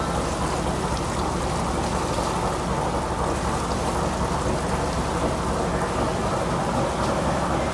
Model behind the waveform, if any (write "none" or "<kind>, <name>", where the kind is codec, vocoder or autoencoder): none